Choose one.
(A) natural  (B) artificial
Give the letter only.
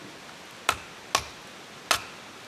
A